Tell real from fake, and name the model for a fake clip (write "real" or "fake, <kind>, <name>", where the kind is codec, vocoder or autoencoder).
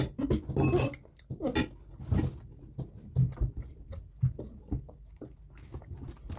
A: real